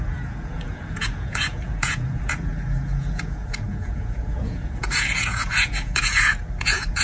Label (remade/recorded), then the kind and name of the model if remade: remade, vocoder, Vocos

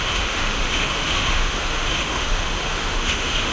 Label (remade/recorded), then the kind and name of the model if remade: remade, autoencoder, DAC-VAE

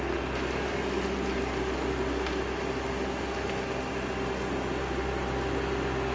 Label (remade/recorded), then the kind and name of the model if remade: recorded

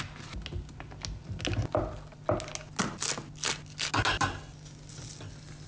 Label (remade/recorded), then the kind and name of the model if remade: recorded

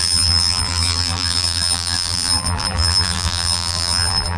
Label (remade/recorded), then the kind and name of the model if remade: remade, vocoder, BigVGAN v2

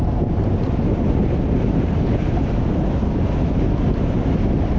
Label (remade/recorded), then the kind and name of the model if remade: recorded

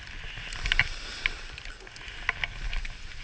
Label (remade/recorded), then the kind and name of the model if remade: recorded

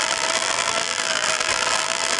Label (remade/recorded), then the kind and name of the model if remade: remade, vocoder, BigVGAN v2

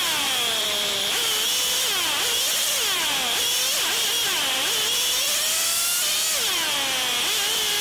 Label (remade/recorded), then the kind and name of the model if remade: remade, vocoder, BigVGAN v2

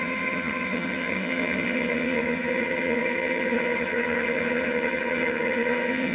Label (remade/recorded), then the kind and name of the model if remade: remade, vocoder, HiFi-GAN